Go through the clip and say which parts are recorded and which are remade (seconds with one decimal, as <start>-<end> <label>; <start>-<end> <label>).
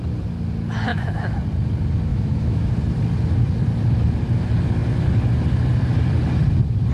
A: 0.0-0.9 recorded; 0.9-1.4 remade; 1.4-2.1 recorded; 2.1-2.7 remade; 2.7-6.9 recorded